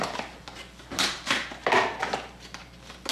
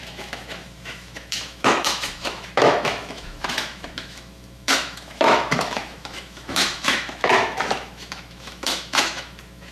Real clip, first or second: first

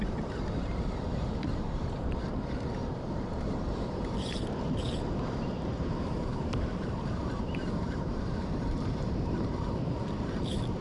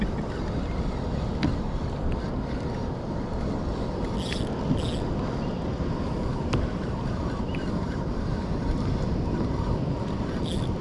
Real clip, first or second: second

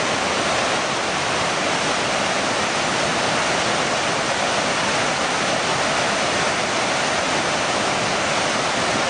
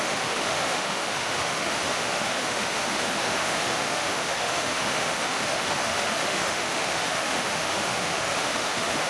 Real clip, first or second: first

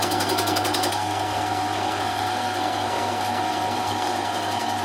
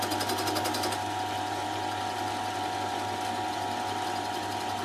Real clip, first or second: second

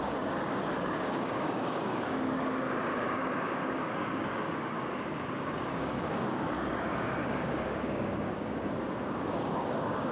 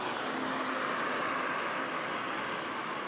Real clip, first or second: second